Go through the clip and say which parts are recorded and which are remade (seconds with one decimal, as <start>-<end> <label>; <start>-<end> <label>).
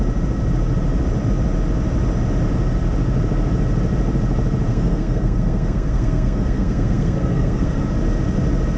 0.0-4.7 recorded; 4.7-7.8 remade; 7.8-8.8 recorded